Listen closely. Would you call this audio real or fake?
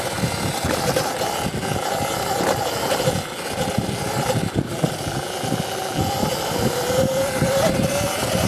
real